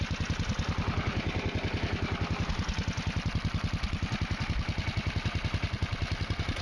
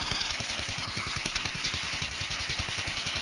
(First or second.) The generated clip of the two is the second